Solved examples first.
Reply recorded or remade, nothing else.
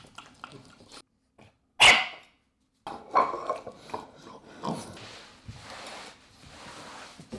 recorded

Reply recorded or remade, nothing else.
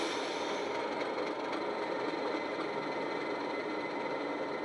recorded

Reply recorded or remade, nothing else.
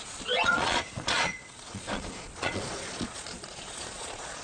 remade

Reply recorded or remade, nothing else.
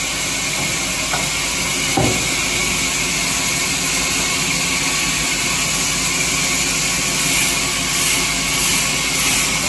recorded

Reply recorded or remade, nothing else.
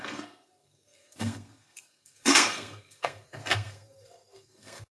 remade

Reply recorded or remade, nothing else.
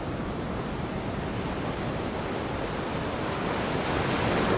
recorded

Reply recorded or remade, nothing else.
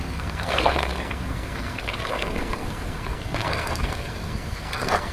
remade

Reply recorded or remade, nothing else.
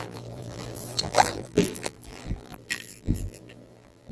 remade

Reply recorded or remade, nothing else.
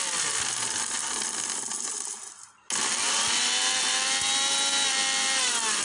recorded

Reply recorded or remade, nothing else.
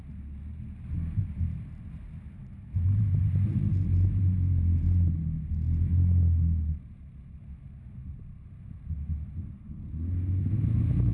recorded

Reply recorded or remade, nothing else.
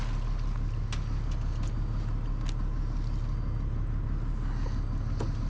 recorded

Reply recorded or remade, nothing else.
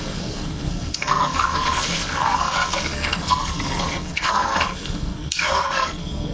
remade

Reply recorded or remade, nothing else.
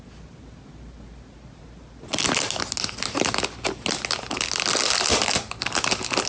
recorded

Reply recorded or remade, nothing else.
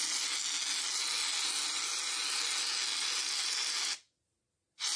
recorded